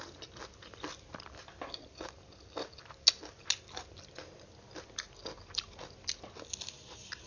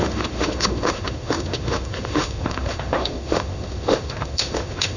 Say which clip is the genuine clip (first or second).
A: first